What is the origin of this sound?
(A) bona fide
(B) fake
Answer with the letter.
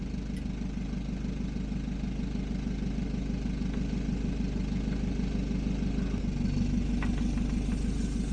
A